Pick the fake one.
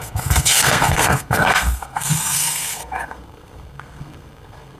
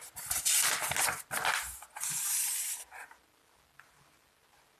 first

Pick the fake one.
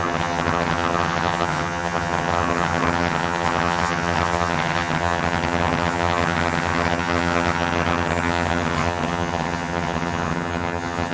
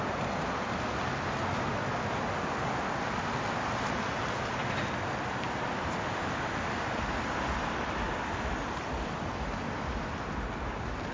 first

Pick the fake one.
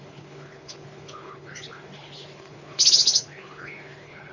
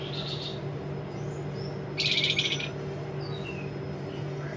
first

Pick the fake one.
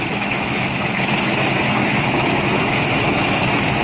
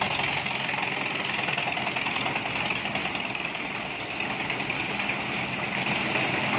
first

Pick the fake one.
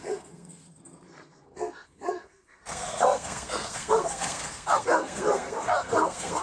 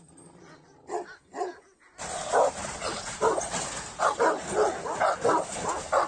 first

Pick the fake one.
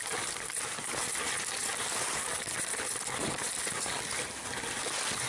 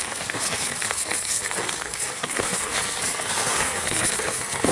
second